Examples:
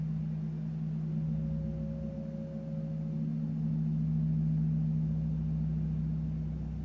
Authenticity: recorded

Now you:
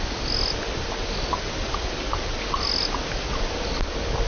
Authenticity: recorded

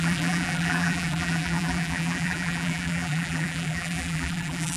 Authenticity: remade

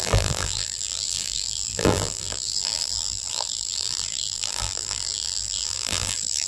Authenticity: remade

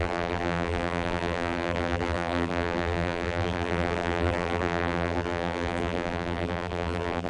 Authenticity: remade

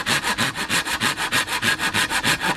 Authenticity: recorded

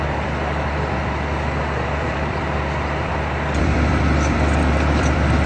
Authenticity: remade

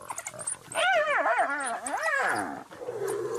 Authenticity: recorded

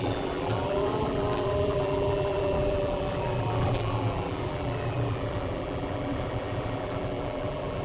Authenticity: remade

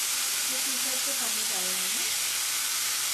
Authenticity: recorded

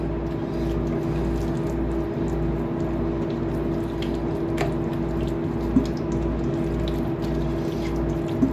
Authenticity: recorded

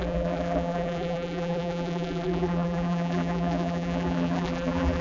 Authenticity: remade